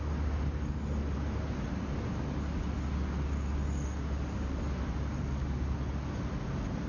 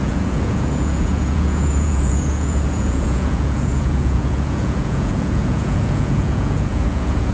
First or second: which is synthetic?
second